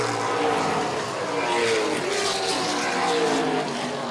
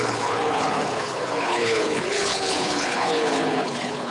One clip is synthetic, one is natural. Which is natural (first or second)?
first